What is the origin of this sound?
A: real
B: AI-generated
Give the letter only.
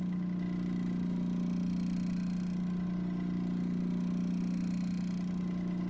A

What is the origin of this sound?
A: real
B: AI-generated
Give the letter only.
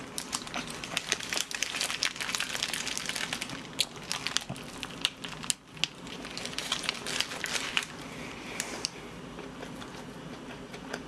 A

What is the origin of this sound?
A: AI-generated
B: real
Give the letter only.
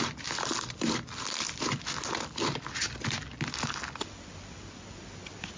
B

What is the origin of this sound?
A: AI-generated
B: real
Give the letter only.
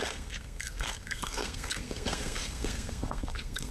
A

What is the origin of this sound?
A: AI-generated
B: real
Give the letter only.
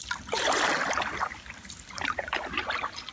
B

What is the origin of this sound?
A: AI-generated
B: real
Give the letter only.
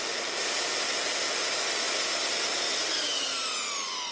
B